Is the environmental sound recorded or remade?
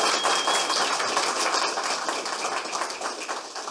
recorded